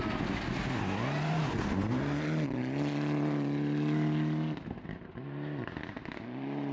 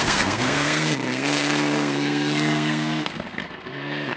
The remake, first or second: second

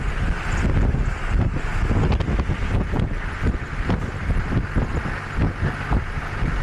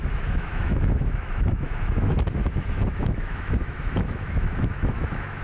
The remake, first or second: second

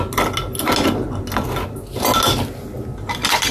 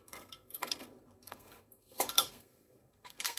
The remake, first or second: second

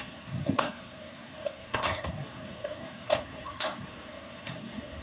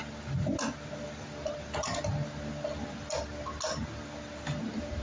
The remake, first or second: first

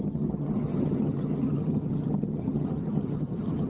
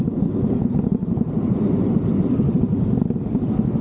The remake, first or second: first